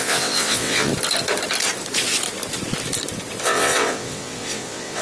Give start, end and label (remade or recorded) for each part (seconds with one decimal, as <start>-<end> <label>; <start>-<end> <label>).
0.0-0.9 remade; 0.9-3.4 recorded; 3.4-5.0 remade